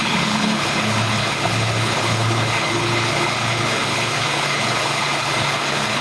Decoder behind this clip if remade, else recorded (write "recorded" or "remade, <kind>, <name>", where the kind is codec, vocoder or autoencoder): remade, codec, HILCodec